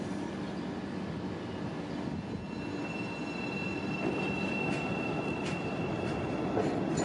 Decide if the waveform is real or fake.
real